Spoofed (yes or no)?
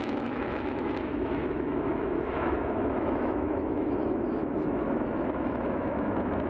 yes